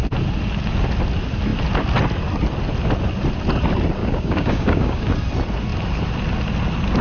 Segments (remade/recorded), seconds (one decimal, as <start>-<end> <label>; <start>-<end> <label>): 0.0-4.0 recorded; 4.0-5.1 remade; 5.1-7.0 recorded